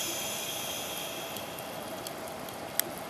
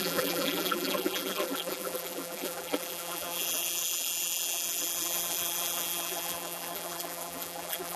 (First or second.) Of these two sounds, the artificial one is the second